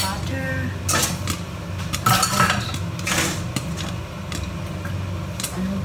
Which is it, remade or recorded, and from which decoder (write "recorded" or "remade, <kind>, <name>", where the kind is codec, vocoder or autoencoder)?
recorded